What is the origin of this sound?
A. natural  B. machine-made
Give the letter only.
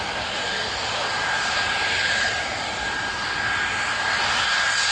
A